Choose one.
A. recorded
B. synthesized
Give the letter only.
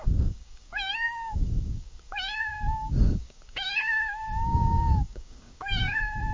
B